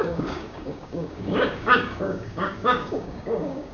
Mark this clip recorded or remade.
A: remade